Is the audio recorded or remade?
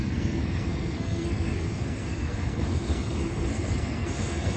remade